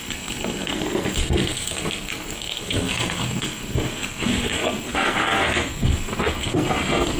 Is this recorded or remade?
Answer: remade